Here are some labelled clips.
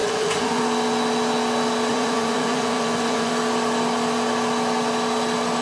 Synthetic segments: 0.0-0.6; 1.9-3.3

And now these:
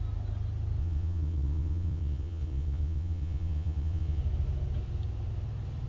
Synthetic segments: 0.8-4.2

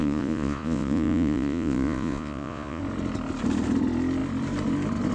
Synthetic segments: 0.0-2.8

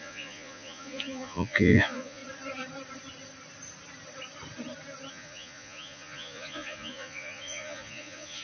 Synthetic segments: 0.0-2.2; 5.1-8.4